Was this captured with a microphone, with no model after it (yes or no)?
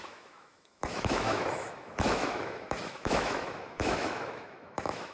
no